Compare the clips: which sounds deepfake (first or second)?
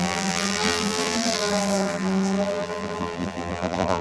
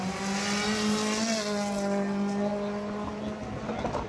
first